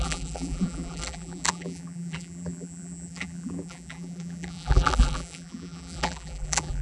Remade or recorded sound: remade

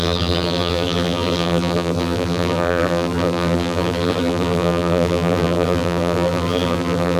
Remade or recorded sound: remade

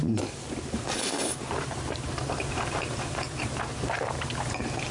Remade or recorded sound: remade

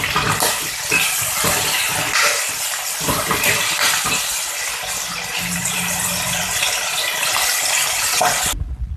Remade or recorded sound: remade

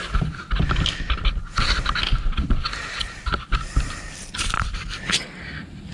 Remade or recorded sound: recorded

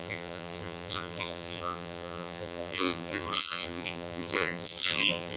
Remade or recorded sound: remade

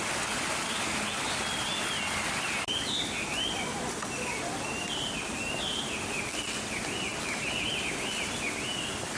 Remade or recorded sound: recorded